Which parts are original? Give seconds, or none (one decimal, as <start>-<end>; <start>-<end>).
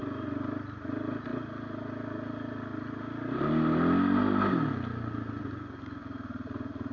0.0-6.9